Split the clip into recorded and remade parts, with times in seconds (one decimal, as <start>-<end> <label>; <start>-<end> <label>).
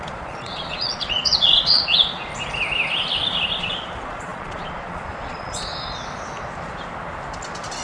0.0-2.3 remade; 2.3-3.6 recorded; 3.6-5.7 remade; 5.7-7.8 recorded